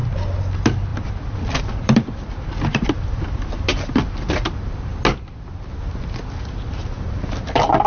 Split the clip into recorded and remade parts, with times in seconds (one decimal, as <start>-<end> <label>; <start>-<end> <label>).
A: 0.0-0.5 recorded; 0.5-4.9 remade; 4.9-6.8 recorded; 6.8-7.9 remade

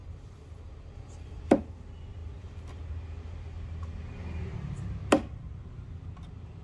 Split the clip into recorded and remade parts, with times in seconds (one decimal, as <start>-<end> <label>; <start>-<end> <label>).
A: 0.0-1.4 remade; 1.4-6.6 recorded

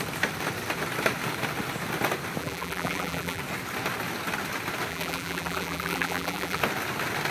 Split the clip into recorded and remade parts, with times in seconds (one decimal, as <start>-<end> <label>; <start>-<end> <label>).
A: 0.0-2.4 recorded; 2.4-3.4 remade; 3.4-4.9 recorded; 4.9-6.6 remade; 6.6-7.3 recorded

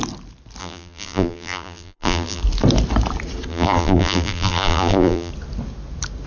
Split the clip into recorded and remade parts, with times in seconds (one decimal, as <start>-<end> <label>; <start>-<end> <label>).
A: 0.0-0.6 recorded; 0.6-2.4 remade; 2.4-3.5 recorded; 3.5-5.3 remade; 5.3-6.3 recorded

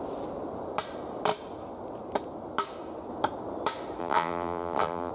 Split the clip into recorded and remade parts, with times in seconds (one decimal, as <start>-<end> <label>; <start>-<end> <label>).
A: 0.0-4.0 recorded; 4.0-5.1 remade

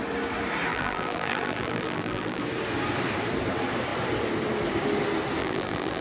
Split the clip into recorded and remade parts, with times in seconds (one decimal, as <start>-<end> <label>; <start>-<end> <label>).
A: 0.0-0.7 recorded; 0.7-2.4 remade; 2.4-5.4 recorded; 5.4-6.0 remade